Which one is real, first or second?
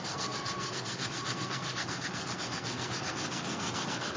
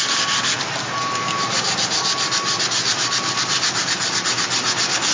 second